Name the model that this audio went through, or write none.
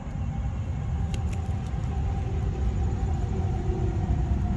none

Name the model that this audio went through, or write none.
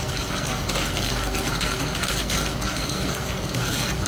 codec, SNAC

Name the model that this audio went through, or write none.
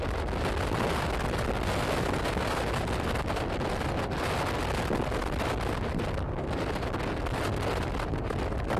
none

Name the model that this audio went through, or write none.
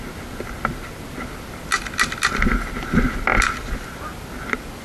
none